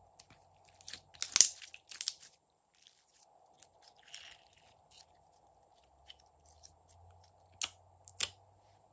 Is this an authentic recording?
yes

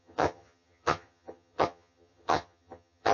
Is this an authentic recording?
no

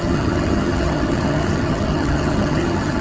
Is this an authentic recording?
no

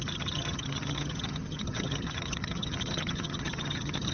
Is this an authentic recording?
no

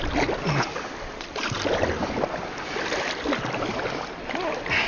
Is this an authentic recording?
yes